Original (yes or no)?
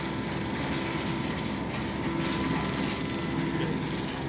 yes